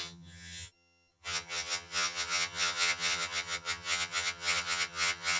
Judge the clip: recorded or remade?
remade